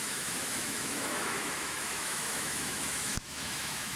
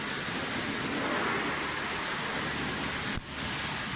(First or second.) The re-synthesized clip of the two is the first